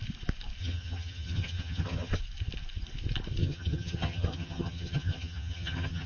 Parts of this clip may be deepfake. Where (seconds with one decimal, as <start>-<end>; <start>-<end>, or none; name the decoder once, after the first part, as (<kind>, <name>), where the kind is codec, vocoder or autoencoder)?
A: 0.6-2.2 (vocoder, HiFi-GAN); 3.4-6.1